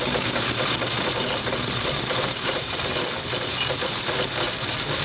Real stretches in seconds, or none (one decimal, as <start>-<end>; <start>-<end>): 0.0-1.8; 3.0-5.0